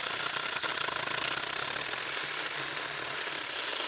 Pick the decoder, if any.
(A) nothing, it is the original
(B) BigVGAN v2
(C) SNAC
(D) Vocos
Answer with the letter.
A